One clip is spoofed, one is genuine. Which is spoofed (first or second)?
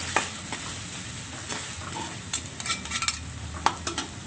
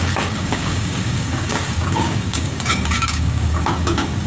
second